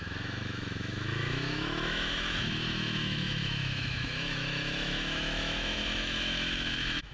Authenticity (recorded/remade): remade